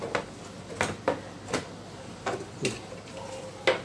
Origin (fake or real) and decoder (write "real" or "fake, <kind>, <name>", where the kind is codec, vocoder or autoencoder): real